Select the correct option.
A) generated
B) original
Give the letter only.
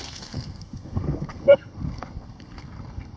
A